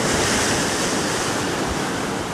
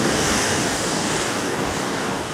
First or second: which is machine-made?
second